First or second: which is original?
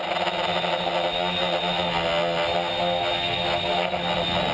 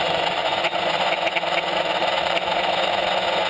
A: first